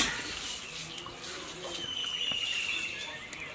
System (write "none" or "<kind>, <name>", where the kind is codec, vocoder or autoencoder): none